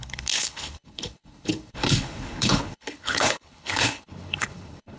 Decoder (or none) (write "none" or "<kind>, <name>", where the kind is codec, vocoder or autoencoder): codec, HILCodec